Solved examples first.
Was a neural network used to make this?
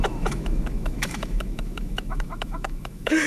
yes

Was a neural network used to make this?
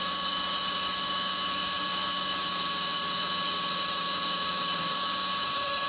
yes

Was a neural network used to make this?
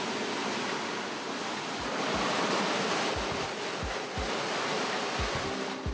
no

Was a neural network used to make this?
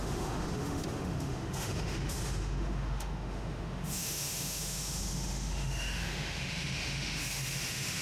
yes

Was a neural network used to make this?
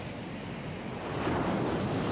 no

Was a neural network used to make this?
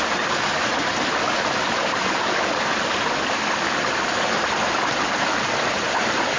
no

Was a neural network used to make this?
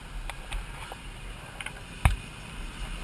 no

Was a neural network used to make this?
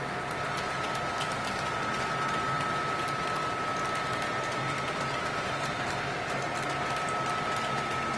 no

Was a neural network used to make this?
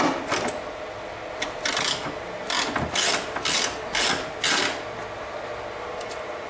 no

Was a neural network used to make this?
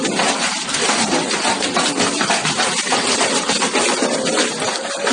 no